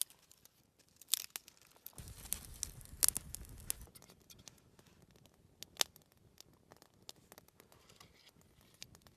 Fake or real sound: real